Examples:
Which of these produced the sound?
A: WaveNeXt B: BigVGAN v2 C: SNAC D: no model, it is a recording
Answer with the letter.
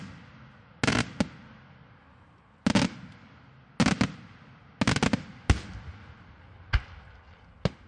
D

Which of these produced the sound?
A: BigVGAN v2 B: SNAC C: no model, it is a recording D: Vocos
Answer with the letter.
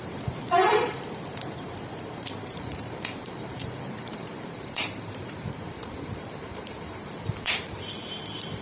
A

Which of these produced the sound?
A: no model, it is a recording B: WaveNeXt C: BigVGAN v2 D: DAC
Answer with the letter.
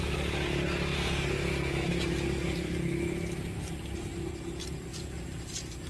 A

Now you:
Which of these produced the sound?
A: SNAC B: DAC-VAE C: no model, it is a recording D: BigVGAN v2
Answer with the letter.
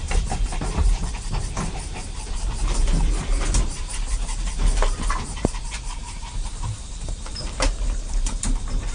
D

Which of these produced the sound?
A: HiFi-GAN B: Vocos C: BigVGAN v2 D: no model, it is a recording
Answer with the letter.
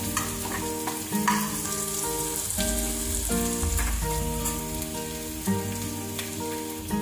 D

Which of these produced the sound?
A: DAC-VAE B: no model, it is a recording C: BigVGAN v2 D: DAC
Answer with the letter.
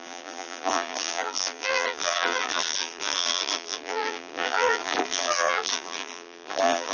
C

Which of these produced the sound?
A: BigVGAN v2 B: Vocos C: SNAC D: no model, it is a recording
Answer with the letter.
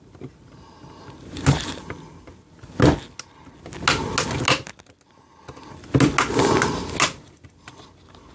D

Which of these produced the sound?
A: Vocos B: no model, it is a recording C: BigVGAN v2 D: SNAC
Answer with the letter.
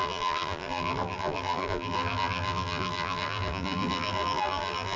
C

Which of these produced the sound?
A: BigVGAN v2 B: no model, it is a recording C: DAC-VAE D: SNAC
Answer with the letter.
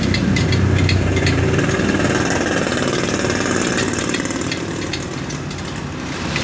B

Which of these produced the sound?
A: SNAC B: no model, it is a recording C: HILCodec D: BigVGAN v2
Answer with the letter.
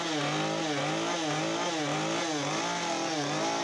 B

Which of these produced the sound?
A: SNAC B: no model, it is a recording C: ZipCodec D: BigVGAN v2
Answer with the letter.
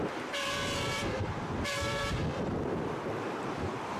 D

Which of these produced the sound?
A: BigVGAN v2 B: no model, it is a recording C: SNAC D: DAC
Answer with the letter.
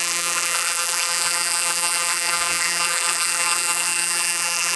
A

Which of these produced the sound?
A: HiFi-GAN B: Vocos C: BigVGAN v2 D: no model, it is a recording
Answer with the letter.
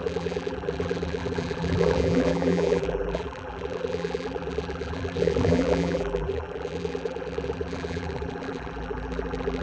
C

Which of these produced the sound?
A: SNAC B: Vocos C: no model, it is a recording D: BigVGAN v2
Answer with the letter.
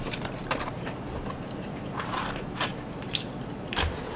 D